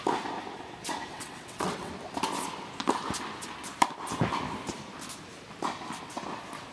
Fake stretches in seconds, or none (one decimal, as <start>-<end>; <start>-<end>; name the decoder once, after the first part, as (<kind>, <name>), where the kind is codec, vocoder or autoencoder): 1.1-1.9 (vocoder, WaveNeXt)